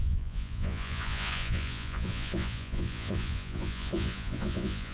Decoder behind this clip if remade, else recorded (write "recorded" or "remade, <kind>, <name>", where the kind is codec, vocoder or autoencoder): remade, vocoder, Vocos